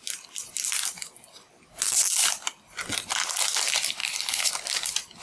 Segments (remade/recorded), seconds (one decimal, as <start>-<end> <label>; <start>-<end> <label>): 0.0-4.0 recorded; 4.0-4.5 remade; 4.5-5.2 recorded